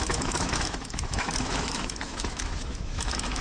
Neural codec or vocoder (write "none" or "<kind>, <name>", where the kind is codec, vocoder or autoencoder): autoencoder, DAC-VAE